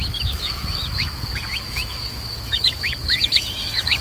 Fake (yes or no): yes